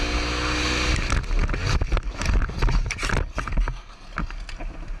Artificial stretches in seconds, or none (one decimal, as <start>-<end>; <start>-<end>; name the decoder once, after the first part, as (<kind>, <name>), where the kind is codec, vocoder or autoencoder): none